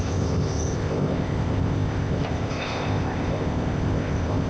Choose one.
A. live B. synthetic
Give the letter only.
B